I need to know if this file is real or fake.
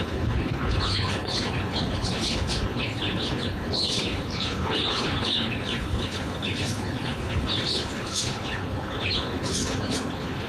fake